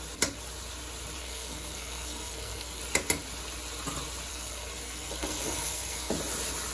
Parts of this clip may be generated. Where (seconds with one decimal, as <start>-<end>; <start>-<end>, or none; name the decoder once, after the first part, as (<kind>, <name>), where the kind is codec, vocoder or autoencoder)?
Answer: 1.2-2.8 (codec, SNAC); 4.3-6.1